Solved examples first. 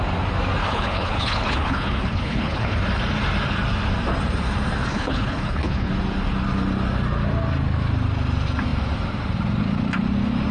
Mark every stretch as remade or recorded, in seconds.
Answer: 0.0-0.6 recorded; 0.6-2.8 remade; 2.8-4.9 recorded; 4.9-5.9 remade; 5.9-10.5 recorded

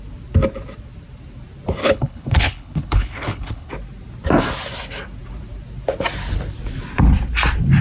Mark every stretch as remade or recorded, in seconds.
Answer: 0.0-1.8 recorded; 1.8-3.7 remade; 3.7-7.8 recorded

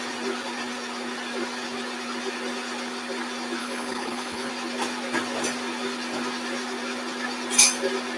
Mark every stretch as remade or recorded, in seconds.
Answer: 0.0-3.6 recorded; 3.6-4.5 remade; 4.5-8.2 recorded

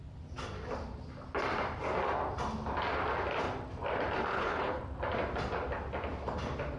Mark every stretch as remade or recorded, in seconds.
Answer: 0.0-4.3 recorded; 4.3-4.8 remade; 4.8-6.8 recorded

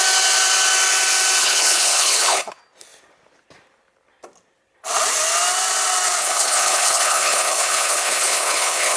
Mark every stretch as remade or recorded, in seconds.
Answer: 0.0-1.4 recorded; 1.4-2.5 remade; 2.5-6.2 recorded; 6.2-9.0 remade

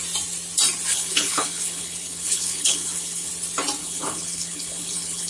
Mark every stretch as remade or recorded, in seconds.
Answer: 0.0-0.9 recorded; 0.9-3.3 remade; 3.3-3.8 recorded; 3.8-5.3 remade

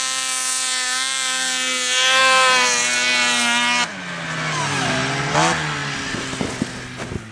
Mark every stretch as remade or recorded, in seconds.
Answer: 0.0-7.3 recorded